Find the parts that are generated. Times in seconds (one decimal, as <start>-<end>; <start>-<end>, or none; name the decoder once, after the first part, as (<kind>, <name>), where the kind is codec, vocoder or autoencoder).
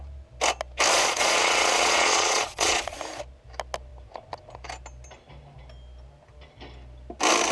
0.9-3.0 (vocoder, Vocos)